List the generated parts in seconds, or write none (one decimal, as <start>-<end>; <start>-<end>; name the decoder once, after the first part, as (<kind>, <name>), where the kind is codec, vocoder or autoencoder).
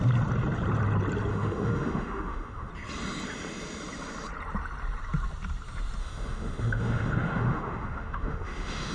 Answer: 1.3-2.7 (autoencoder, DAC-VAE); 6.0-8.9